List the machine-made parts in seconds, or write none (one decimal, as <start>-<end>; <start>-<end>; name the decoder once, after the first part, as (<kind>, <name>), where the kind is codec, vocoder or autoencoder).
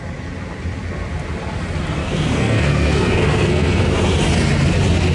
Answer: 2.0-3.9 (codec, SNAC)